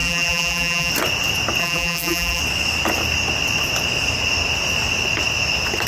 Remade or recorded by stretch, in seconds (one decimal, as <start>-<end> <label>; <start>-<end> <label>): 0.0-0.9 remade; 0.9-1.6 recorded; 1.6-2.4 remade; 2.4-5.9 recorded